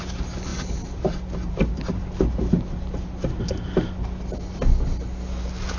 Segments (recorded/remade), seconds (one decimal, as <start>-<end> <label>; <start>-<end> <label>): 0.0-5.8 recorded